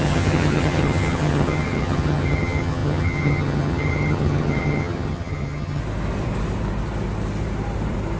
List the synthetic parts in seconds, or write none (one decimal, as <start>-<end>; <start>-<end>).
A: 0.0-5.8

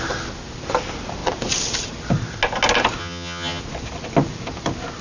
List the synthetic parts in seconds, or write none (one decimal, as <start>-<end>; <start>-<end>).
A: 3.0-3.6

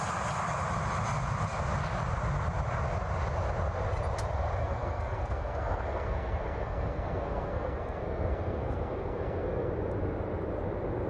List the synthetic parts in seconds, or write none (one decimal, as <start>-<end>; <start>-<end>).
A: 4.6-9.7

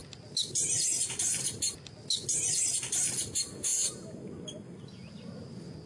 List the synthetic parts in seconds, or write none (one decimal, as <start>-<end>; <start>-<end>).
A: none

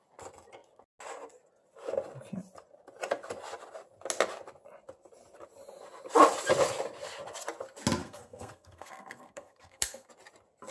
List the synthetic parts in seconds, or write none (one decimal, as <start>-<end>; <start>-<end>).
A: 8.0-10.1

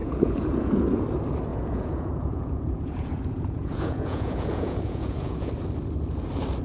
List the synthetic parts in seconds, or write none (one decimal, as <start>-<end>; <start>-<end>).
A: 0.0-1.0; 1.5-5.5

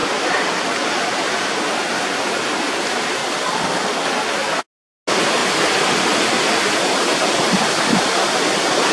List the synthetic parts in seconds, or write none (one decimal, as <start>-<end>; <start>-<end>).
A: none

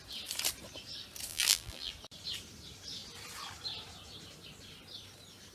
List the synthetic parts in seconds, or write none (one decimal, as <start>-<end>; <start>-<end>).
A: 1.3-1.9